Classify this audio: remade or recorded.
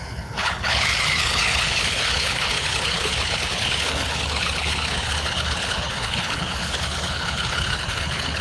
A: remade